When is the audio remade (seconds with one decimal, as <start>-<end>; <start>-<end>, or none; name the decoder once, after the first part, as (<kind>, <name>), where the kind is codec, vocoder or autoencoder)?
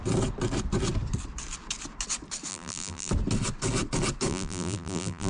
2.5-3.1 (vocoder, BigVGAN v2); 4.3-5.3